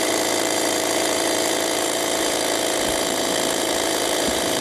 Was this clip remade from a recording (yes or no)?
yes